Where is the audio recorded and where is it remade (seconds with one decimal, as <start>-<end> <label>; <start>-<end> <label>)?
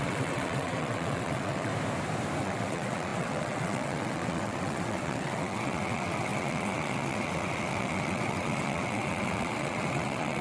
0.0-1.7 remade; 1.7-2.4 recorded; 2.4-10.4 remade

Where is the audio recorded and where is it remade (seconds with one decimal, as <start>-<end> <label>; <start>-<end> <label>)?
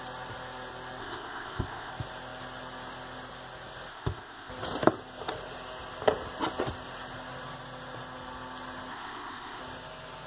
0.0-1.0 recorded; 1.0-1.9 remade; 1.9-3.9 recorded; 3.9-4.5 remade; 4.5-8.9 recorded; 8.9-9.6 remade; 9.6-10.3 recorded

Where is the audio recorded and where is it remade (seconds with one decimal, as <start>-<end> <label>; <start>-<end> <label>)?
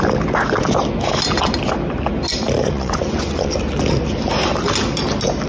0.0-2.6 recorded; 2.6-3.5 remade; 3.5-5.5 recorded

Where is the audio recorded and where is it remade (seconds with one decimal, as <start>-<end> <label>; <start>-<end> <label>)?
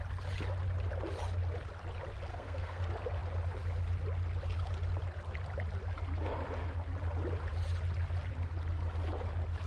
0.0-2.3 recorded; 2.3-2.8 remade; 2.8-9.7 recorded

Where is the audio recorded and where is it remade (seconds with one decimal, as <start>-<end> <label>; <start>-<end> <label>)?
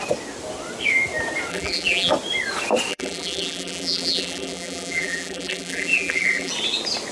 0.0-1.5 recorded; 1.5-2.1 remade; 2.1-2.9 recorded; 2.9-6.5 remade; 6.5-7.1 recorded